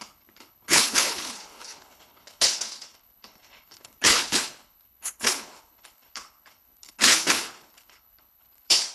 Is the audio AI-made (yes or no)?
yes